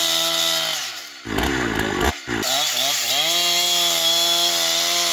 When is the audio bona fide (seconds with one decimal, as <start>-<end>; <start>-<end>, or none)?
0.0-5.1